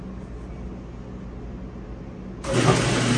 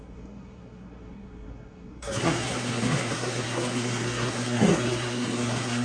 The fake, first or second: second